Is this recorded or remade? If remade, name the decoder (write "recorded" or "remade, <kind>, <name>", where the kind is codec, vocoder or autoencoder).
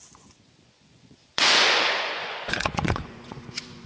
remade, vocoder, Vocos